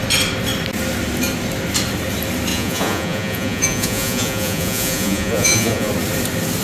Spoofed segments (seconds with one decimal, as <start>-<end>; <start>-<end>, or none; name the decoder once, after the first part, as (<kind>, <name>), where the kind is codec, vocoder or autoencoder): 2.5-5.9 (vocoder, Vocos)